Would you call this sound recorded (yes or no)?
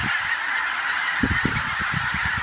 no